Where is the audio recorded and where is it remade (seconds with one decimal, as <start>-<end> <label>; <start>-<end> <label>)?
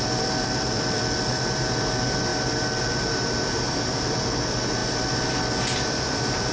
0.0-2.3 remade; 2.3-2.8 recorded; 2.8-6.5 remade